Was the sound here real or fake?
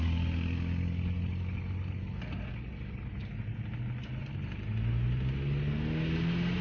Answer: real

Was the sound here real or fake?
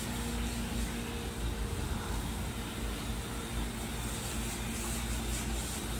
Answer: real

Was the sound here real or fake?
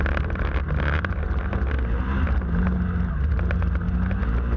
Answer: real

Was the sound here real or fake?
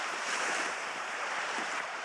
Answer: fake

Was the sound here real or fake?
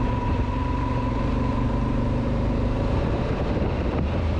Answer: fake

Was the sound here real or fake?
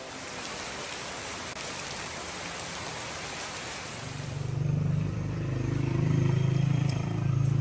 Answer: fake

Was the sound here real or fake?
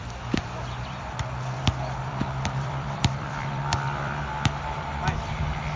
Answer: fake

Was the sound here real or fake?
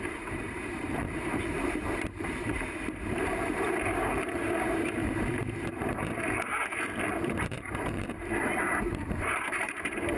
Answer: fake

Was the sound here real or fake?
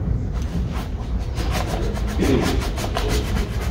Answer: real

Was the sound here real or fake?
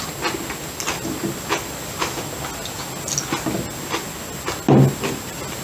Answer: real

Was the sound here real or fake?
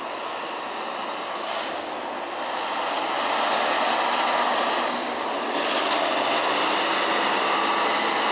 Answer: real